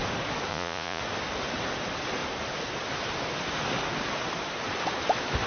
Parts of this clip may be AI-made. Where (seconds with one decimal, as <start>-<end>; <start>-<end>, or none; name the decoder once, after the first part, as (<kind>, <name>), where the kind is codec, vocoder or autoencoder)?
0.5-1.0 (vocoder, Vocos)